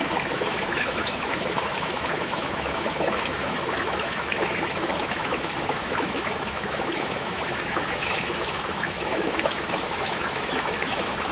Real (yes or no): no